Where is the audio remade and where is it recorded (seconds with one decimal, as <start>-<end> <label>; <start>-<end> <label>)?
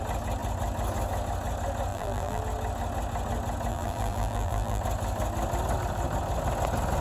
0.0-1.9 recorded; 1.9-2.4 remade; 2.4-3.7 recorded; 3.7-4.8 remade; 4.8-7.0 recorded